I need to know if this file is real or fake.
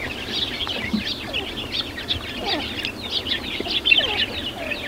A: real